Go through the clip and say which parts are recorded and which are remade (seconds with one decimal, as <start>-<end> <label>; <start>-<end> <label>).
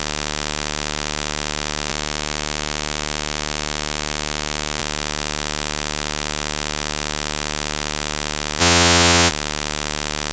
0.0-8.6 recorded; 8.6-9.3 remade; 9.3-10.3 recorded